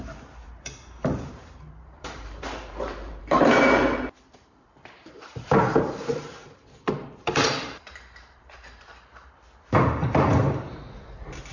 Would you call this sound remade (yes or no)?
yes